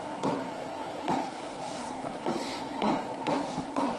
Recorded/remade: remade